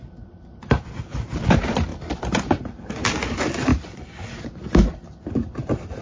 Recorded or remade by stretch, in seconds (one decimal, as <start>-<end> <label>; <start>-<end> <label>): 0.0-1.9 remade; 1.9-2.5 recorded; 2.5-3.7 remade; 3.7-4.9 recorded; 4.9-6.0 remade